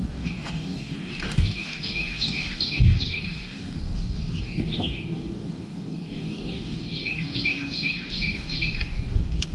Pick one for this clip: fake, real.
fake